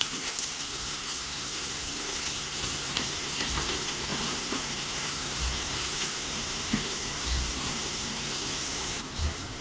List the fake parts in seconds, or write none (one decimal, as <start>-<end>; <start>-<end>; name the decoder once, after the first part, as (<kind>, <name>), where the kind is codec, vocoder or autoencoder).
0.0-9.6 (codec, SNAC)